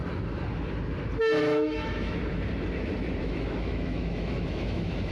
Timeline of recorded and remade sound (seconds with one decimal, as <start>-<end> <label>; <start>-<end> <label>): 0.0-1.4 recorded; 1.4-2.2 remade; 2.2-3.2 recorded; 3.2-5.1 remade

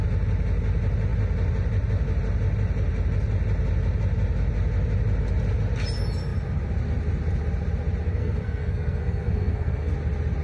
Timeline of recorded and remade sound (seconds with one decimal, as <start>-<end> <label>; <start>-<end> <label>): 0.0-8.1 recorded; 8.1-9.9 remade; 9.9-10.4 recorded

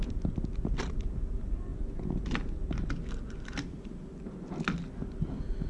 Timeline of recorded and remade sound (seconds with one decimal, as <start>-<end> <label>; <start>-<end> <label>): 0.0-5.7 recorded

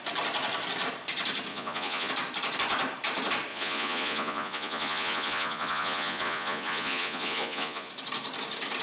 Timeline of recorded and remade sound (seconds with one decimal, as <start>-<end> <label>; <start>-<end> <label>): 0.0-1.5 recorded; 1.5-2.1 remade; 2.1-3.5 recorded; 3.5-7.9 remade; 7.9-8.8 recorded

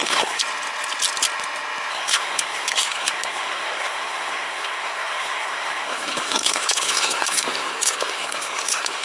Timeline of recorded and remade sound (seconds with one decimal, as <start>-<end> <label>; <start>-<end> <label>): 0.0-0.4 remade; 0.4-1.9 recorded; 1.9-9.0 remade

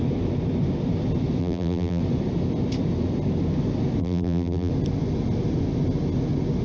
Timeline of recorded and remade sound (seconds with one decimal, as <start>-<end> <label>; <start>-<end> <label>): 0.0-1.4 recorded; 1.4-2.0 remade; 2.0-4.0 recorded; 4.0-4.7 remade; 4.7-6.6 recorded